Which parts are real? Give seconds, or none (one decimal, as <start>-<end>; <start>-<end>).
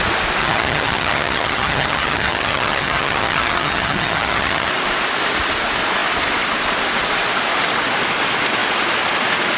0.0-0.4; 4.7-9.6